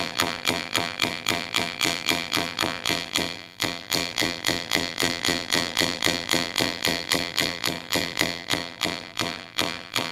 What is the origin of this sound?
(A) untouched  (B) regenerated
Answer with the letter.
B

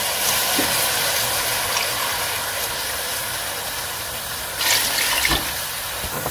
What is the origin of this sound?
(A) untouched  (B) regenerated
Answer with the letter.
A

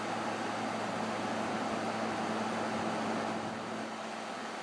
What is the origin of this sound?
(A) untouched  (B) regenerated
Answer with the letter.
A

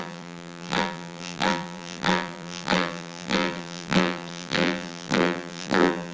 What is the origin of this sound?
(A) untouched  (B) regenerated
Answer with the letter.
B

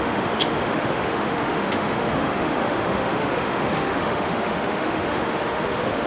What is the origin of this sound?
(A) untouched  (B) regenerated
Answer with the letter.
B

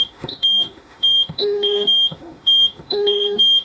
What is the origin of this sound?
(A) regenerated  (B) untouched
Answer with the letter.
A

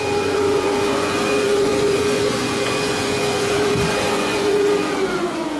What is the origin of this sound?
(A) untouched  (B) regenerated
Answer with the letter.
B